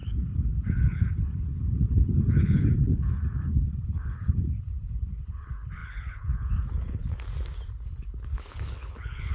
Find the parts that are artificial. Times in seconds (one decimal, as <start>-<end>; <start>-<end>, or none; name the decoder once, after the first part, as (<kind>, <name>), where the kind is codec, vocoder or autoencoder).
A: 0.0-7.0 (codec, HILCodec); 7.7-9.3

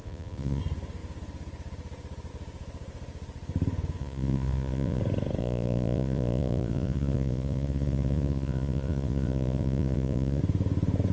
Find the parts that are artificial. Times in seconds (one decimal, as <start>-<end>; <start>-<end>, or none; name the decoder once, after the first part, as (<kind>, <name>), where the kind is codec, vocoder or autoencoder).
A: 0.0-0.6 (vocoder, Vocos); 4.0-5.0; 5.4-10.4

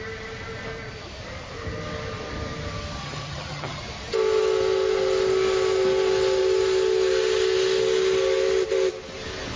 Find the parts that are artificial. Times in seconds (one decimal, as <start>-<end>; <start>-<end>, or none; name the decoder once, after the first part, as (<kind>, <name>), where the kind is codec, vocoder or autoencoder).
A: 3.0-3.8 (vocoder, HiFi-GAN)

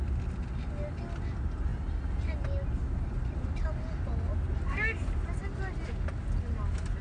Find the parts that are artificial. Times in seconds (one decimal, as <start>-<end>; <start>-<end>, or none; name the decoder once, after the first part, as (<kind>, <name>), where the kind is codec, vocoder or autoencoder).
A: none

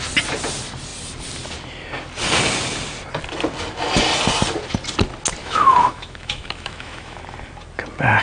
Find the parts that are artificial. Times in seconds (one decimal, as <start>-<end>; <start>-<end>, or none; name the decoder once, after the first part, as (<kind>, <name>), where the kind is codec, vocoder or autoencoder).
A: 5.4-7.2 (autoencoder, DAC-VAE)

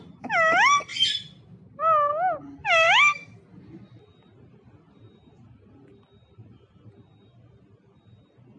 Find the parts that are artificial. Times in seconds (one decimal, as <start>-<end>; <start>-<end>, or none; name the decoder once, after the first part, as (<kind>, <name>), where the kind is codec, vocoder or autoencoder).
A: none

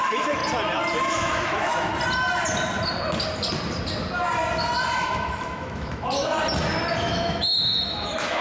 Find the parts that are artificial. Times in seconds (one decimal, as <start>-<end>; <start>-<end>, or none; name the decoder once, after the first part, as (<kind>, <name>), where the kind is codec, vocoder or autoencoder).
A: 0.0-0.4 (autoencoder, DAC-VAE); 1.1-1.9; 5.0-6.3; 7.0-8.4

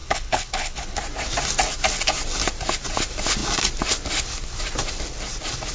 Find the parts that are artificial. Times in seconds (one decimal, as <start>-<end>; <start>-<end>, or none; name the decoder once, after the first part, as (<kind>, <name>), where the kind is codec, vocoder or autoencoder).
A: 0.0-1.0 (codec, HILCodec)